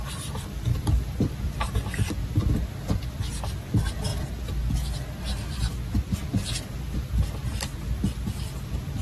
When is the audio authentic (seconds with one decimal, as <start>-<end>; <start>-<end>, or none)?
0.0-0.7; 2.5-9.0